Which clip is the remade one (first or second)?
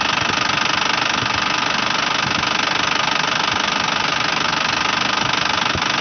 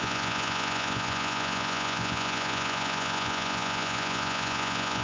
second